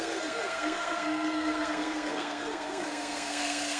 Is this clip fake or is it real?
fake